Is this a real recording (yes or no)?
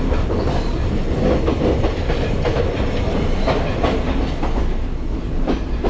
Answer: yes